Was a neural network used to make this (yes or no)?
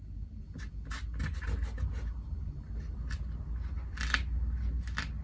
no